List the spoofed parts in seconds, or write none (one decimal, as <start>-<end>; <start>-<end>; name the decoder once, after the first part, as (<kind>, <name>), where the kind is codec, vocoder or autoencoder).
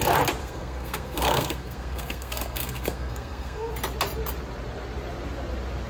0.4-3.7 (codec, SNAC)